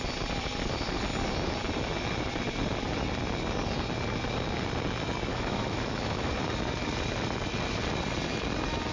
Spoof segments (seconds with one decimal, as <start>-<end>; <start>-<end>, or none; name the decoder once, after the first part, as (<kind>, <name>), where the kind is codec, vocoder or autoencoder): 5.3-6.3 (autoencoder, DAC-VAE)

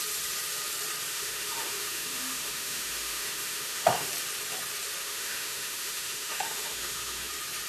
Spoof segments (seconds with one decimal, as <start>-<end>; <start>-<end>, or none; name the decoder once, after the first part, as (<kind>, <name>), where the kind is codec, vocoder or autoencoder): 1.1-4.1 (autoencoder, DAC-VAE); 5.0-7.3

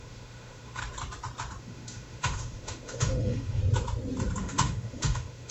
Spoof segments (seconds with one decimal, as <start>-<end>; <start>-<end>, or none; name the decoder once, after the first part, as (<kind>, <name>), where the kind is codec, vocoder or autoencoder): 0.0-0.8 (autoencoder, DAC-VAE); 1.6-3.6; 4.4-5.5